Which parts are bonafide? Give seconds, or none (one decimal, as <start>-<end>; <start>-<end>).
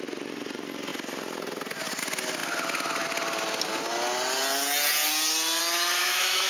0.0-6.0